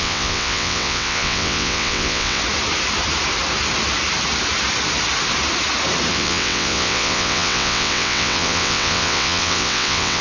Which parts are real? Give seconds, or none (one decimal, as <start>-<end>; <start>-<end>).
2.4-6.1